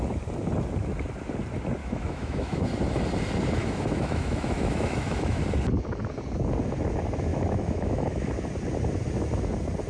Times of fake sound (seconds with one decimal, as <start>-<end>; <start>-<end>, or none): 1.8-2.6; 3.6-5.4; 7.3-8.3

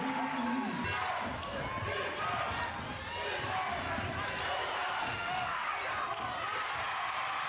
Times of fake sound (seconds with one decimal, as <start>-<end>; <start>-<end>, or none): 5.0-5.7

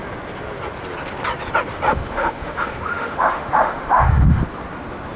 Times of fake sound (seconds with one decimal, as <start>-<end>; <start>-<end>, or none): 1.9-4.4

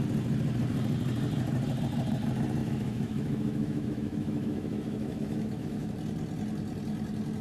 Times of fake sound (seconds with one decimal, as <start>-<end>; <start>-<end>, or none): 2.6-5.9

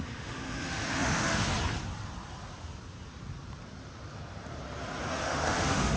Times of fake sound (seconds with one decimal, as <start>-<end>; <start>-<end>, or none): 0.0-1.5; 5.1-6.0